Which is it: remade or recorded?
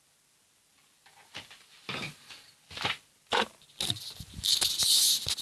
recorded